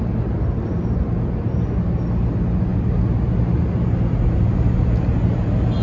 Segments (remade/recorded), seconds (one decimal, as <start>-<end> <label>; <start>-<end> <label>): 0.0-5.8 recorded